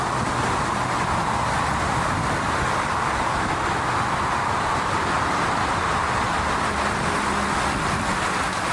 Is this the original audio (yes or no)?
yes